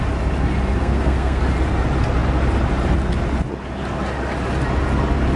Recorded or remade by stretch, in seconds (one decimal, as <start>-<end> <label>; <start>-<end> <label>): 0.0-0.8 recorded; 0.8-1.4 remade; 1.4-5.4 recorded